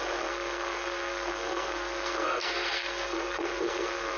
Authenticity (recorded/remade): remade